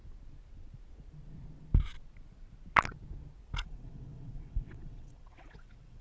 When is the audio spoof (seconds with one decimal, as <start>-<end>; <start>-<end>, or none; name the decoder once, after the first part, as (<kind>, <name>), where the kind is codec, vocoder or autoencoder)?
3.6-6.0 (vocoder, WaveNeXt)